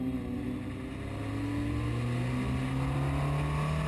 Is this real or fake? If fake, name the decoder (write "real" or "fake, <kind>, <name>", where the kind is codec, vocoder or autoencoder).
real